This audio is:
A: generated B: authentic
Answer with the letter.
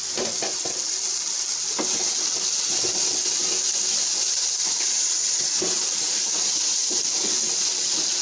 B